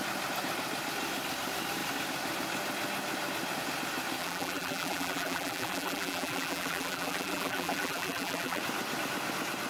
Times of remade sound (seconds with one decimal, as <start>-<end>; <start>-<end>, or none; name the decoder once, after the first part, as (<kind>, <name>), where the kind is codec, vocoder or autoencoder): 4.2-8.6 (vocoder, BigVGAN v2)